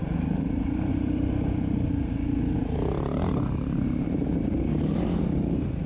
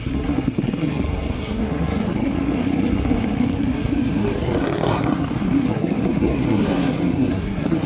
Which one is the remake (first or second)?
second